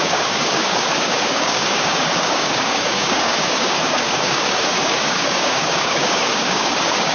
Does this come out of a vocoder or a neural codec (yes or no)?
yes